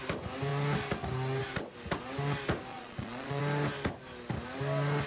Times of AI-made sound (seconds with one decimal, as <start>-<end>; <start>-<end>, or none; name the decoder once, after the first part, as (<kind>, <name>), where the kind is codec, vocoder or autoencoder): 2.7-3.4 (vocoder, Vocos)